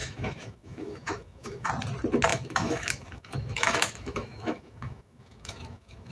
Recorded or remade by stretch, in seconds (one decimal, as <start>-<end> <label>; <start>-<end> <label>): 0.0-1.7 remade; 1.7-2.3 recorded; 2.3-6.1 remade